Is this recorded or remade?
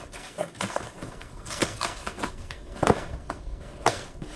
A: remade